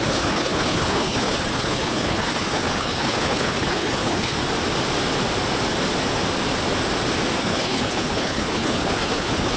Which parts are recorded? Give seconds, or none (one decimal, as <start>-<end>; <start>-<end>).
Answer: 4.4-7.4